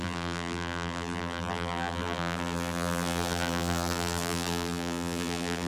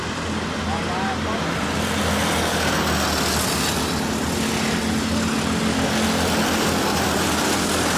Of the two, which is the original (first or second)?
second